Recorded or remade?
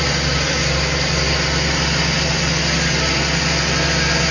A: recorded